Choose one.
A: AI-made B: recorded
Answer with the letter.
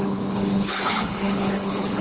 A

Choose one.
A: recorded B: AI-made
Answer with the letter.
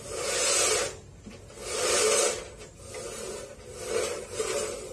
A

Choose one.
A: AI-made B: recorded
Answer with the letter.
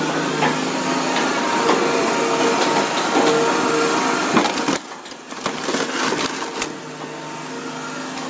B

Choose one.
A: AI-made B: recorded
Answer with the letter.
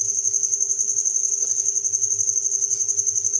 B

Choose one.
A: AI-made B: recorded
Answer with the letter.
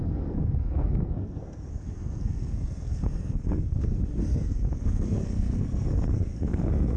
A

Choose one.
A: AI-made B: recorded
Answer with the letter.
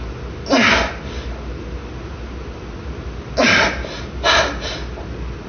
B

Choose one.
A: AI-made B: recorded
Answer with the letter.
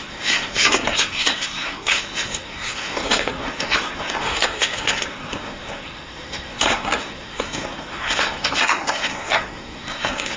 A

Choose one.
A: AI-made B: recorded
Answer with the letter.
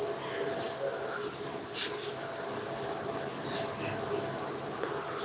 B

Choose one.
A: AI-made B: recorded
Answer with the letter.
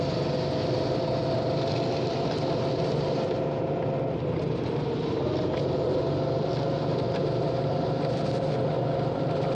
B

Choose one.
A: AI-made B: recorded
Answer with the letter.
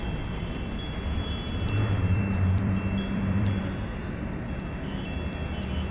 A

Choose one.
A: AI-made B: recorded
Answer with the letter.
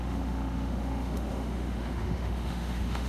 A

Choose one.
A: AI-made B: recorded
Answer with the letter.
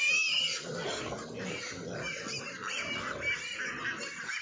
B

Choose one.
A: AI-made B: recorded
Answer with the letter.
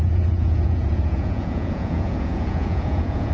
A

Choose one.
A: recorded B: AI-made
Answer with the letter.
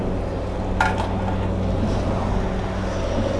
A